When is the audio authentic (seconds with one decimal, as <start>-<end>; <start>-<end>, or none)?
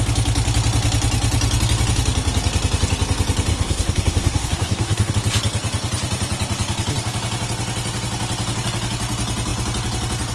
0.0-3.5; 5.1-10.3